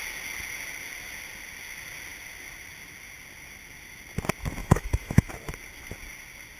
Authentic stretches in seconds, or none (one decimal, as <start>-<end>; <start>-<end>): 0.0-4.6; 5.3-6.6